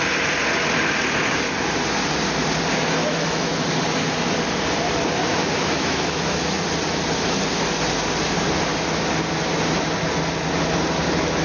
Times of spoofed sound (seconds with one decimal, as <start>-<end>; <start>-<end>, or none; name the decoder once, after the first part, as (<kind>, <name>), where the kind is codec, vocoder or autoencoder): 3.0-3.6 (autoencoder, DAC-VAE); 5.3-6.4